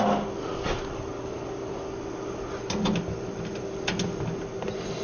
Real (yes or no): yes